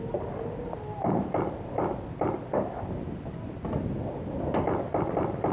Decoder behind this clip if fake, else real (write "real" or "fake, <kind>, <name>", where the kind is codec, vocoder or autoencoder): real